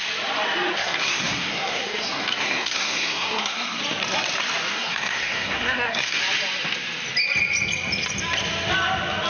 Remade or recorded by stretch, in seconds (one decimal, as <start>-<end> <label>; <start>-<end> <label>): 0.0-0.7 recorded; 0.7-3.8 remade; 3.8-4.7 recorded; 4.7-6.2 remade; 6.2-9.3 recorded